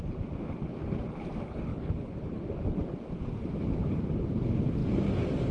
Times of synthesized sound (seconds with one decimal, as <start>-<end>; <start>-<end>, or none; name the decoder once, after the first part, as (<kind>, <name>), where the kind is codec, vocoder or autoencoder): 1.7-2.4 (codec, HILCodec)